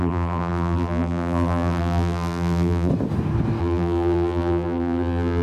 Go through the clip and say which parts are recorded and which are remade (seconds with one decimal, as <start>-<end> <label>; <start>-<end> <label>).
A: 0.0-2.9 remade; 2.9-3.6 recorded; 3.6-5.4 remade